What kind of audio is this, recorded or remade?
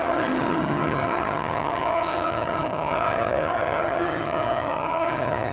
remade